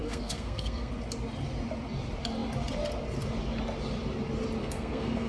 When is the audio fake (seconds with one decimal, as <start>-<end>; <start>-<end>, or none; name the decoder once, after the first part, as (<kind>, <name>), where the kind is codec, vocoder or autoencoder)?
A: 0.0-0.9 (codec, SNAC); 4.6-5.3